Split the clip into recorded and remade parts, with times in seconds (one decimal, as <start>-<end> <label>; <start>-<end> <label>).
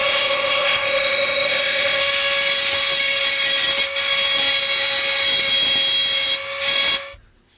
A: 0.0-2.0 remade; 2.0-7.6 recorded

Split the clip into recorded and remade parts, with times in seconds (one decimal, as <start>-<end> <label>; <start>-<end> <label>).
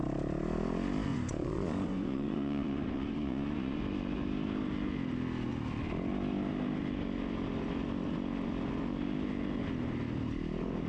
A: 0.0-1.1 recorded; 1.1-3.8 remade; 3.8-10.9 recorded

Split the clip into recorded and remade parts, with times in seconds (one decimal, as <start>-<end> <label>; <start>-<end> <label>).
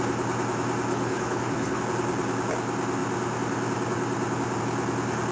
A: 0.0-0.9 recorded; 0.9-1.8 remade; 1.8-5.3 recorded